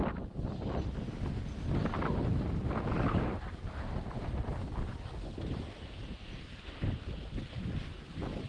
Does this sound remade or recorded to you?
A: recorded